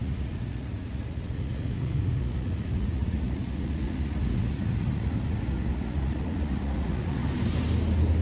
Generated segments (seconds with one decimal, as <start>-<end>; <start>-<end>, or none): 0.0-7.2